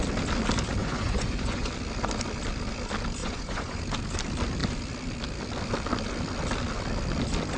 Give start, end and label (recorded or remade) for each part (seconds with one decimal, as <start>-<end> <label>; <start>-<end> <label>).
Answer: 0.0-0.8 recorded; 0.8-1.7 remade; 1.7-3.2 recorded; 3.2-3.8 remade; 3.8-7.6 recorded